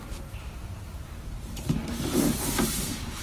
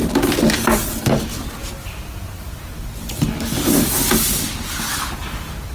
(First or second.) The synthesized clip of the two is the first